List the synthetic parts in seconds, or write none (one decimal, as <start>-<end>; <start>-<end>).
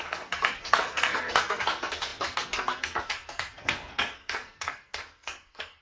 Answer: 0.0-5.8